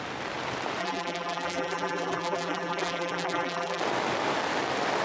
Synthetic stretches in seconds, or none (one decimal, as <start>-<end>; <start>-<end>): 0.8-3.8